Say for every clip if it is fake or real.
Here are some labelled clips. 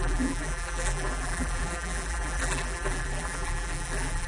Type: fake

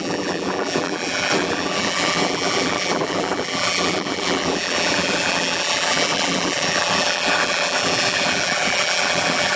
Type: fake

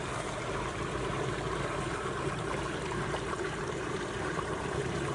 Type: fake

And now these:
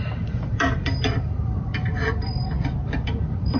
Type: fake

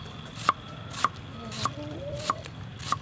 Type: real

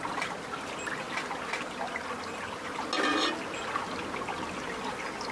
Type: real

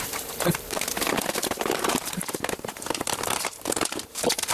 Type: fake